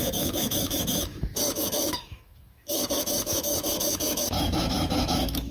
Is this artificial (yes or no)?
yes